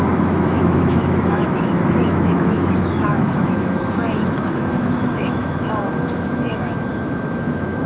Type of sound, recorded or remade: remade